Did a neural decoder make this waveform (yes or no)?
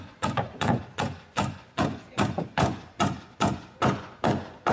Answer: yes